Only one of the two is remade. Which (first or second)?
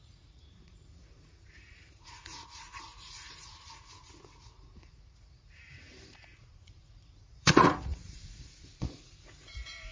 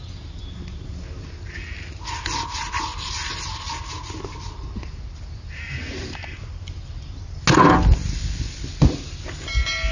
first